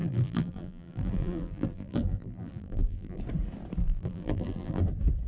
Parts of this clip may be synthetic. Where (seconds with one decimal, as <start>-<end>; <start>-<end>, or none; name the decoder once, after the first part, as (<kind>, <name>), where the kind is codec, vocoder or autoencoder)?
0.0-3.2 (vocoder, BigVGAN v2); 3.8-4.8